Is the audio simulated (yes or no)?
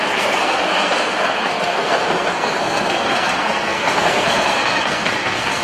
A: yes